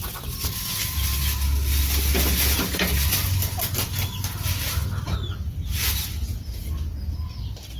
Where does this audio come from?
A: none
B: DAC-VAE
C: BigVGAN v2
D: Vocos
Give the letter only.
A